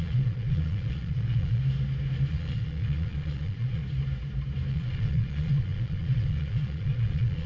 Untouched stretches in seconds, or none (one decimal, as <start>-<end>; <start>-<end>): 1.6-2.3; 3.8-4.7